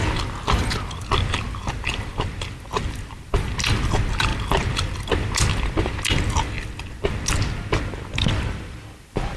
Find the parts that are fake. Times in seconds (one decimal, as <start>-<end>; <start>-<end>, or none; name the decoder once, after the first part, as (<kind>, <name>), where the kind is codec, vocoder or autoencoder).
none